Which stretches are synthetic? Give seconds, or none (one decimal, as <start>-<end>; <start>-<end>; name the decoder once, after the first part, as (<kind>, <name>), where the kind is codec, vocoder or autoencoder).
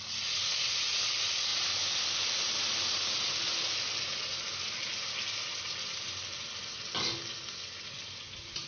none